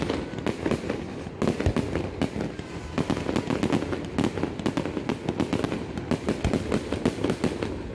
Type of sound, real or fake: real